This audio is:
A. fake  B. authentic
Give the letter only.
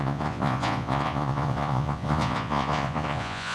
A